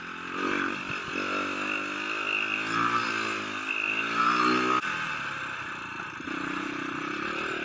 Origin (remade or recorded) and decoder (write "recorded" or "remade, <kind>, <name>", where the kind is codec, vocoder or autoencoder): recorded